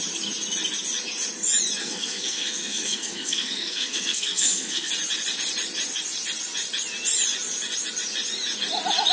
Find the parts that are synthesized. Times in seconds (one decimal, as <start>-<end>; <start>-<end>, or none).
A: 1.8-4.9